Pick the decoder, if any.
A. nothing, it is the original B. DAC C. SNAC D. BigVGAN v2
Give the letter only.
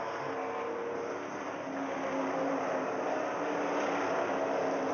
A